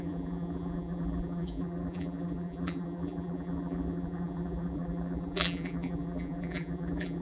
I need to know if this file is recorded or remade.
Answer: remade